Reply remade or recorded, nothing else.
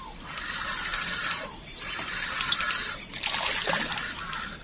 recorded